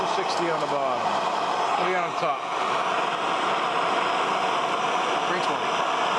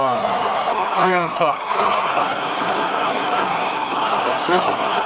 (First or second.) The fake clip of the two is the second